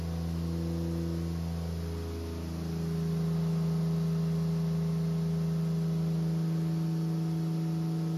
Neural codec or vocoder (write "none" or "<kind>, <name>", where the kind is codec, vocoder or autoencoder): none